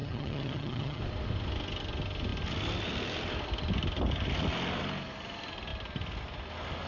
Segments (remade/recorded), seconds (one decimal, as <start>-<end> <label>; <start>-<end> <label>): 0.0-1.0 remade; 1.0-6.9 recorded